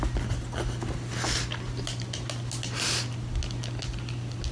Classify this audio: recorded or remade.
recorded